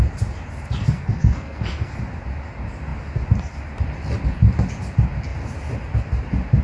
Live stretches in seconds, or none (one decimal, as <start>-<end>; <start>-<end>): 0.0-0.8; 2.0-6.6